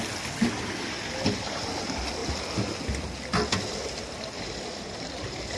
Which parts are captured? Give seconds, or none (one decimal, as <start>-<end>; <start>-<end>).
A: 0.0-5.6